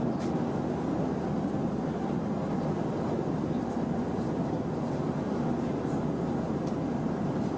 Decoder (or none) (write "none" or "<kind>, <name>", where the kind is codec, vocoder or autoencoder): none